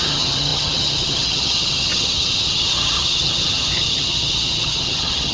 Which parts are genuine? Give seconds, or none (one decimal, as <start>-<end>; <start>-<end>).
none